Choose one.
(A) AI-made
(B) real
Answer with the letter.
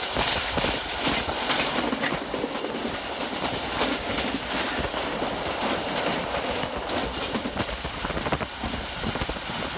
B